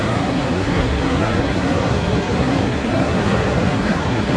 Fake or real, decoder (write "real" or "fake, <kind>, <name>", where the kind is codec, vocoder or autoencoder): fake, codec, SNAC